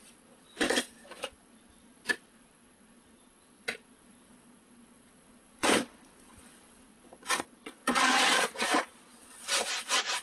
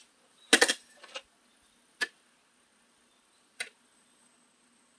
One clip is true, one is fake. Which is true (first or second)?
second